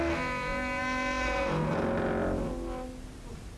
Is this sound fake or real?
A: real